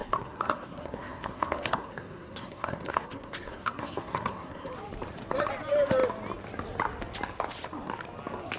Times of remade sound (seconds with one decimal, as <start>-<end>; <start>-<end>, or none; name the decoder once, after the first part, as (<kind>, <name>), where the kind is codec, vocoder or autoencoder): 0.0-4.7 (codec, SNAC)